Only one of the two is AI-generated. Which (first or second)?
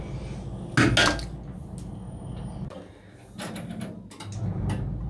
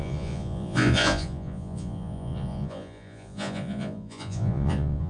second